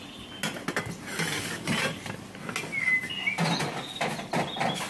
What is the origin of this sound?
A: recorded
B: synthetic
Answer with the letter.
A